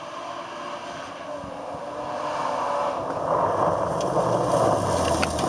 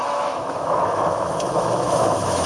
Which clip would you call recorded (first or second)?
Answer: first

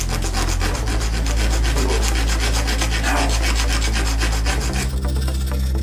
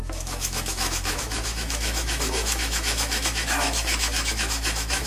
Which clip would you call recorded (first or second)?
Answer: first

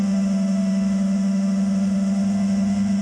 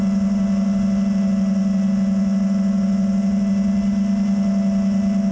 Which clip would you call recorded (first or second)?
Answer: second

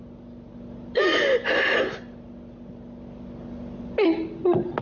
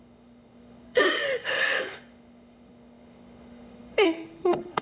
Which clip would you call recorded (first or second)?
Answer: first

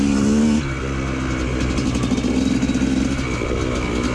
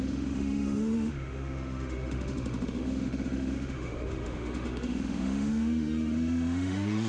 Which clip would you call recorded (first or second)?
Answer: first